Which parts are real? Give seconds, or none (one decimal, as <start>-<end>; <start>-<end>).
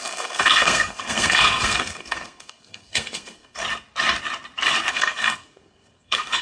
3.6-4.9